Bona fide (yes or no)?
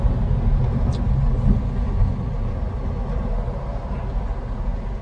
yes